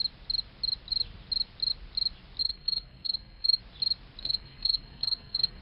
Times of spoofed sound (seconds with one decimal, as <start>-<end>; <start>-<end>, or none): 2.4-3.6; 4.2-5.6